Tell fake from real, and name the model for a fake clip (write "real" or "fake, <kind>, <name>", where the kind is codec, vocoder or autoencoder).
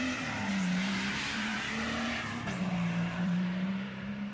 fake, vocoder, BigVGAN v2